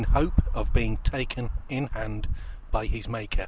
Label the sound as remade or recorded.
recorded